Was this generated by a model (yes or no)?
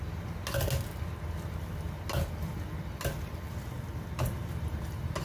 no